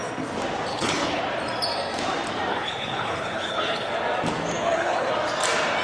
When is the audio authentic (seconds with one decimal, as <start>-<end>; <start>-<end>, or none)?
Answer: 0.0-0.7; 1.2-2.5; 3.9-4.6; 5.1-5.8